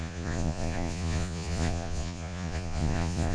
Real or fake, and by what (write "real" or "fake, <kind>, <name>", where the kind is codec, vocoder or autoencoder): fake, vocoder, Vocos